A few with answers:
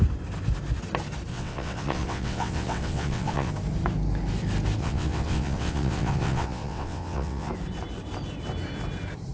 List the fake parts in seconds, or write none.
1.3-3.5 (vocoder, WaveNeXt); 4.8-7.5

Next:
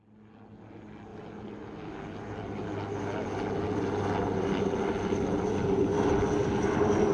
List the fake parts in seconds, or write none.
none

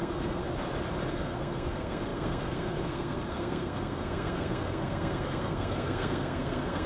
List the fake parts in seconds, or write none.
0.0-0.4 (codec, SNAC); 1.1-6.9

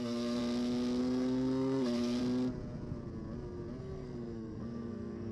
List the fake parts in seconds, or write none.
0.0-0.4 (codec, SNAC); 1.0-2.2; 3.8-5.3